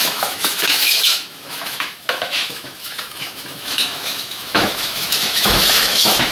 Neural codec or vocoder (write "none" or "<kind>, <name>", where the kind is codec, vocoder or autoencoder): autoencoder, DAC-VAE